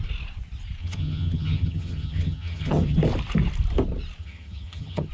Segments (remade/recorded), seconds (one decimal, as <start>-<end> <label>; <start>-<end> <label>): 0.0-0.8 recorded; 0.8-3.0 remade; 3.0-4.2 recorded; 4.2-5.1 remade